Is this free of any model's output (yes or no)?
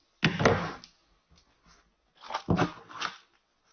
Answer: yes